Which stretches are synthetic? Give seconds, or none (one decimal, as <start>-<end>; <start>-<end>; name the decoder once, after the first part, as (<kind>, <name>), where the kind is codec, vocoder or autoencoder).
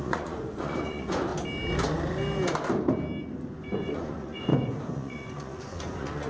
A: 0.0-1.3 (vocoder, Vocos); 3.7-6.3